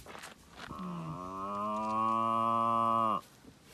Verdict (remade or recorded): recorded